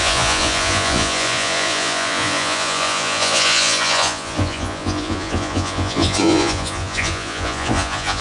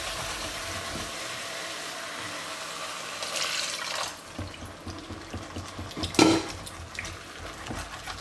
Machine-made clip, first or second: first